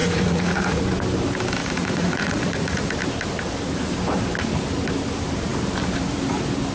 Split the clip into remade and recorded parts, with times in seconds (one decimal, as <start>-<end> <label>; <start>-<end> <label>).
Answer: 0.0-0.8 remade; 0.8-1.6 recorded; 1.6-2.9 remade; 2.9-6.7 recorded